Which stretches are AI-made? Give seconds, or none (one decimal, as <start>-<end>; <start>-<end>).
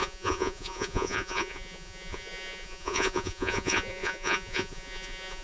0.0-5.4